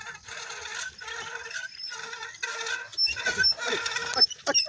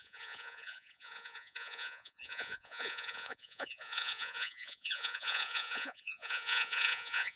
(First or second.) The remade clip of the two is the second